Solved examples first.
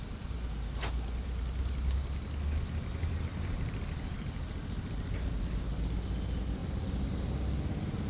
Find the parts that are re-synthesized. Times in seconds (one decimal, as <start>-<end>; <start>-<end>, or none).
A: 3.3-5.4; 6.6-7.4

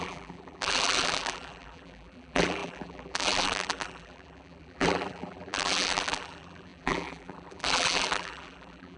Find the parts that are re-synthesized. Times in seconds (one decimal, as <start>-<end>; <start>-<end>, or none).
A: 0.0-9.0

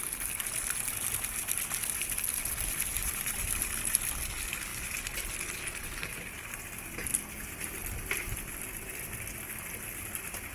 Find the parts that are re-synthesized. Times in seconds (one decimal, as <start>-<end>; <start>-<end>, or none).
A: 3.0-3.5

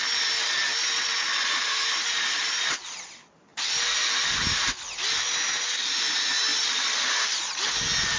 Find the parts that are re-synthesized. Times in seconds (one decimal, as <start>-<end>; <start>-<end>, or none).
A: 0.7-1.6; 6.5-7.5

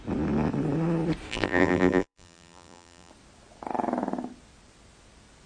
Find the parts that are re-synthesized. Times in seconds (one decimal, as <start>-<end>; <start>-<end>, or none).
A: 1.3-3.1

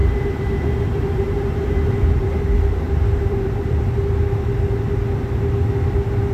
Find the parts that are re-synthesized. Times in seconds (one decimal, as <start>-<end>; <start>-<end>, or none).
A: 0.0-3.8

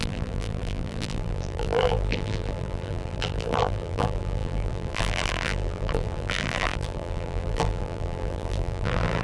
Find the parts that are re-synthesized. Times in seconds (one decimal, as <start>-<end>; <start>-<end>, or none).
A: 0.0-9.2

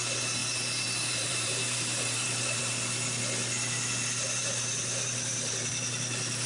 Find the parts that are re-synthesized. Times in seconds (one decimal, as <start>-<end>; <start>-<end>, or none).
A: 0.4-2.6; 4.4-5.7